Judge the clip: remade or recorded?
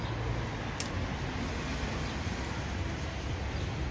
recorded